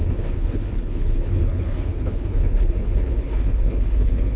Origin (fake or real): fake